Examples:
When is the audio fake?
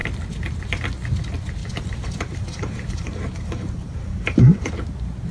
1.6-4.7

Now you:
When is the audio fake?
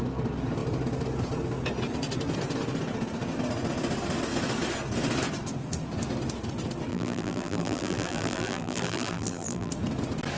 6.9-9.7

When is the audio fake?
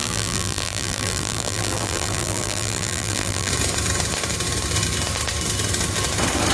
0.0-3.5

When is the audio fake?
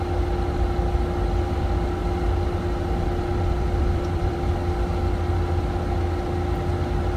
3.3-4.5